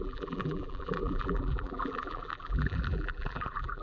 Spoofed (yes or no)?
yes